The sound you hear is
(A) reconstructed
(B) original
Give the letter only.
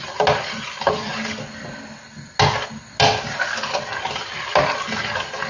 B